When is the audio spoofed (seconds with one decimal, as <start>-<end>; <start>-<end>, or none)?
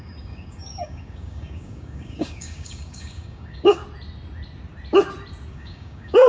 0.0-3.8; 5.5-6.3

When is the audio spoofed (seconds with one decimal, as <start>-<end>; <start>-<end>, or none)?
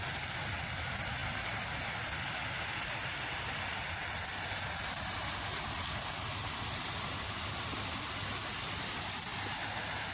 none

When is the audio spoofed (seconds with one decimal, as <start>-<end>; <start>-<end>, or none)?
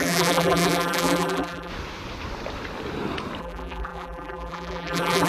0.0-1.7; 3.4-5.3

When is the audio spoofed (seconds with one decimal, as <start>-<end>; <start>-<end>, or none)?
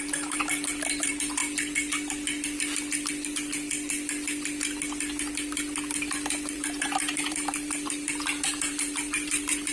0.0-1.4; 6.5-9.7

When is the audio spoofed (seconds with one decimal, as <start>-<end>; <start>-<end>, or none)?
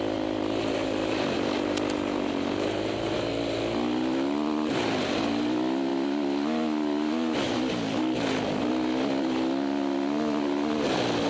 none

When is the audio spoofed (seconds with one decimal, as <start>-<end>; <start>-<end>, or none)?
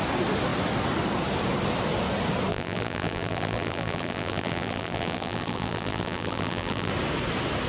2.5-6.9